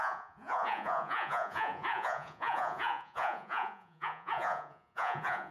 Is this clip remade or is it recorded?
remade